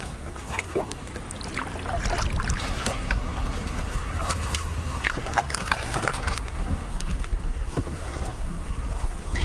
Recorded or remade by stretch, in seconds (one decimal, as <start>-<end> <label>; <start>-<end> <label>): 0.0-1.1 remade; 1.1-2.6 recorded; 2.6-9.4 remade